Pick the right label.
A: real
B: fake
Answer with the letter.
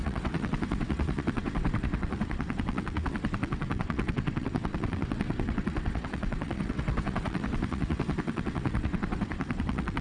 B